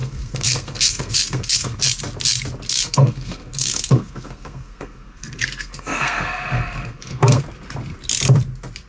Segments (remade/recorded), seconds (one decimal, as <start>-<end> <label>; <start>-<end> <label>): 0.0-1.8 remade; 1.8-2.7 recorded; 2.7-7.4 remade; 7.4-8.9 recorded